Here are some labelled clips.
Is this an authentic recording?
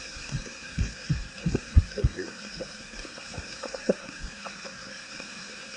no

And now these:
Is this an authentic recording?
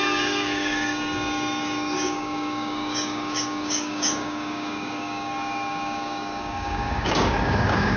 no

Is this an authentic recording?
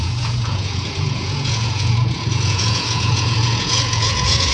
no